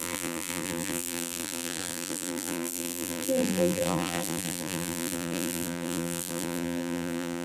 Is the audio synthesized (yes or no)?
yes